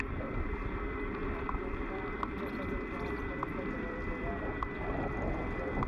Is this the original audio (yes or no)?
yes